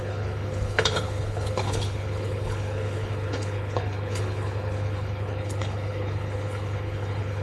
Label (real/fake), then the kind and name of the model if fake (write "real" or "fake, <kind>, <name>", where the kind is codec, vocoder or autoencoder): fake, codec, HILCodec